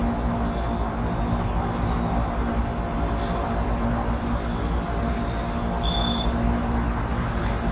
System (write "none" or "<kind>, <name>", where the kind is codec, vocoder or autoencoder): none